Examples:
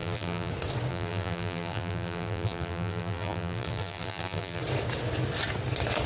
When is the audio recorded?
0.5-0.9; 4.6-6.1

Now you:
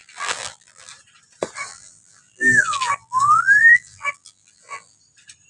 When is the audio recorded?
0.9-1.7; 5.0-5.5

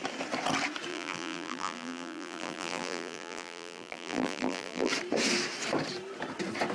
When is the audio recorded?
0.0-0.9; 4.9-6.7